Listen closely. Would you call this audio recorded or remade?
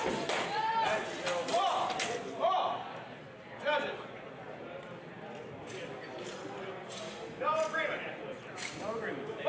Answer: recorded